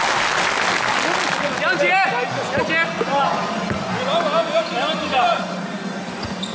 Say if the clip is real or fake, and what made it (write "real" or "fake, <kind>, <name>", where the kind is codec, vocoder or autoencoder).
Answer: real